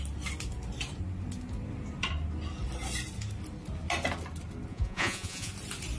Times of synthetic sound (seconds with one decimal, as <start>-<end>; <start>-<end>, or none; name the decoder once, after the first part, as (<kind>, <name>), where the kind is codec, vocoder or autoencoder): 4.7-5.5 (vocoder, Vocos)